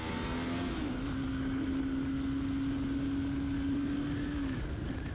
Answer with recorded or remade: recorded